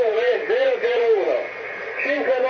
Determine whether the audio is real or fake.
real